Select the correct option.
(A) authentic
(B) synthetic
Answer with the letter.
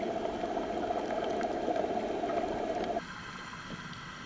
A